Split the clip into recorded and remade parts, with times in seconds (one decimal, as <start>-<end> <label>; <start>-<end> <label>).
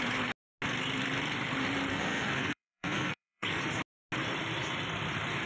0.0-1.9 recorded; 1.9-3.6 remade; 3.6-5.5 recorded